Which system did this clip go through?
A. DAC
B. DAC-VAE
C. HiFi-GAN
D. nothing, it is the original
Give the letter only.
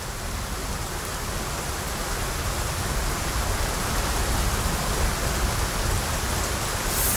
D